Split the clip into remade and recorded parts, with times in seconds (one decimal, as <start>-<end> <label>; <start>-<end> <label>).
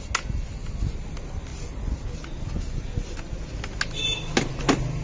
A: 0.0-5.0 recorded